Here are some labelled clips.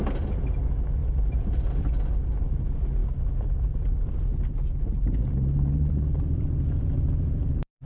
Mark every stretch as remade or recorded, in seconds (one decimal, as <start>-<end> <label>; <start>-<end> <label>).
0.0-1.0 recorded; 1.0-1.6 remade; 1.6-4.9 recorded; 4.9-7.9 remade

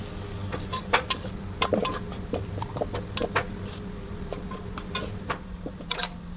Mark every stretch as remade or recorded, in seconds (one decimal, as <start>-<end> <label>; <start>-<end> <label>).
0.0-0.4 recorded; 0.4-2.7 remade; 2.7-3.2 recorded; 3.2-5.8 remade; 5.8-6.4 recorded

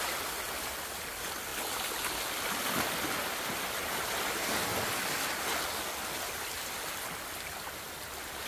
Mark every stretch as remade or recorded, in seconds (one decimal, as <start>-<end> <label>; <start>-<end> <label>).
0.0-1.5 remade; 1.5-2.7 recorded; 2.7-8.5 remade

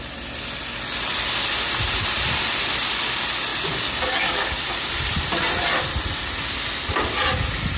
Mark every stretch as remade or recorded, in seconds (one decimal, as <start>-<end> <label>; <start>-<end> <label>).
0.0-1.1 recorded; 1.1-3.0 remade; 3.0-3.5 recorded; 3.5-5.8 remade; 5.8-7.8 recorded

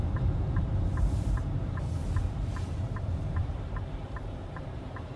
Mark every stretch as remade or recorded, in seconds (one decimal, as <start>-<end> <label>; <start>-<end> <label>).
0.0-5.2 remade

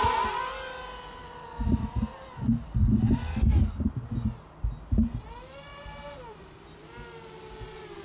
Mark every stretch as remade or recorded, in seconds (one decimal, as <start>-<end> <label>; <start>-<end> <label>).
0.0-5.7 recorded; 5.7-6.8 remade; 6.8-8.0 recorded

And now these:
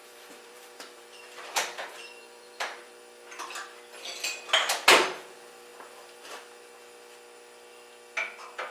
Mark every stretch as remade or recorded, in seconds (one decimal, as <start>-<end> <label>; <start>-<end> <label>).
0.0-2.9 remade; 2.9-8.7 recorded